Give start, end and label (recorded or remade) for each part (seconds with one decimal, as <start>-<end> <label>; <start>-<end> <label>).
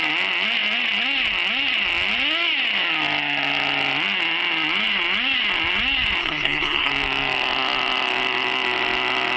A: 0.0-6.2 recorded; 6.2-6.9 remade; 6.9-9.4 recorded